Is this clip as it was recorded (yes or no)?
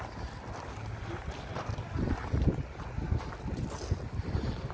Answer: yes